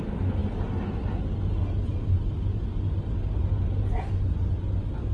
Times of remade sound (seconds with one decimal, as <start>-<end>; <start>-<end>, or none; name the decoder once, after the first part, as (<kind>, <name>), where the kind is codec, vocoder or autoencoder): none